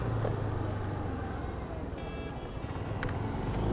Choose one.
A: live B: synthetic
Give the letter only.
A